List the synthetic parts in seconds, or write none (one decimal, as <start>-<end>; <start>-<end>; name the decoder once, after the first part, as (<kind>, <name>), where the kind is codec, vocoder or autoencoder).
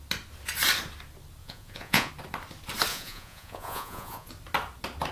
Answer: 1.4-2.1 (vocoder, Vocos); 2.9-4.3